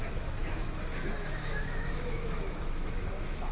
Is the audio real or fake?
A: fake